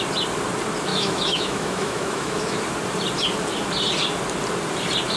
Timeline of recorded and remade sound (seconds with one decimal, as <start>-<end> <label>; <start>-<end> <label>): 0.0-0.9 recorded; 0.9-2.6 remade; 2.6-5.2 recorded